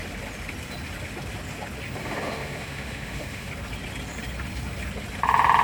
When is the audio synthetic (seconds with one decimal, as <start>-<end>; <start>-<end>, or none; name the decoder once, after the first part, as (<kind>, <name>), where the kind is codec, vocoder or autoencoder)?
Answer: 2.0-3.5 (autoencoder, DAC-VAE)